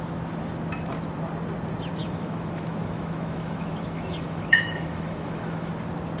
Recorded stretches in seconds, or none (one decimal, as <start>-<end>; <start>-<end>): 0.0-2.0; 5.7-6.2